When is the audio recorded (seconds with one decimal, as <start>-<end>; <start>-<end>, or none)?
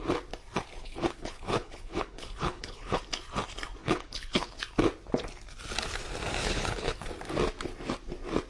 0.0-0.8; 3.0-3.8; 4.6-6.4; 7.1-8.5